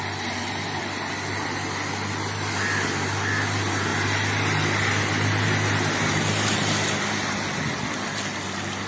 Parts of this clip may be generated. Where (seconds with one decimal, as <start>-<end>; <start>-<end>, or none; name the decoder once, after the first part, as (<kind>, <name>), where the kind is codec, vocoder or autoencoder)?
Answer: none